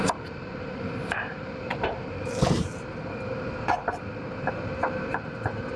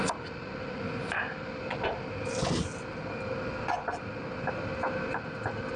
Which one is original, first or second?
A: second